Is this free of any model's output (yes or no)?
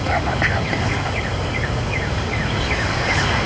no